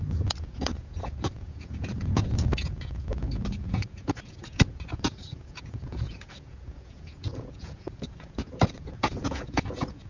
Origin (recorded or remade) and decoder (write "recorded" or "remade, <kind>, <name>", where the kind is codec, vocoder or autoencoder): remade, vocoder, Vocos